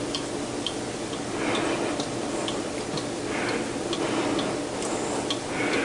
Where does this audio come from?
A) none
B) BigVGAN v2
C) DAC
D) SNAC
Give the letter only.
A